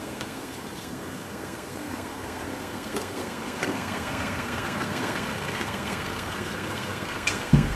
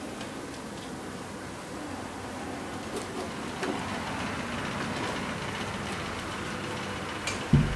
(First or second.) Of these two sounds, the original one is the second